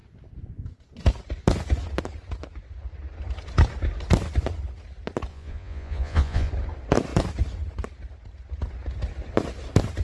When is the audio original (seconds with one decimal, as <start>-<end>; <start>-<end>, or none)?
0.0-5.3; 6.5-10.0